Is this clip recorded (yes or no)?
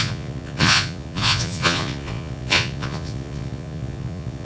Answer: no